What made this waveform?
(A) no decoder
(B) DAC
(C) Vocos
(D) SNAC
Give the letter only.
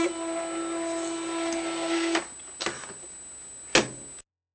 A